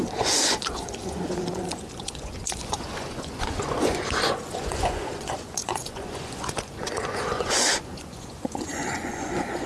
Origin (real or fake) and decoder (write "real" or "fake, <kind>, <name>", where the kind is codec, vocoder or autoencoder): fake, vocoder, Vocos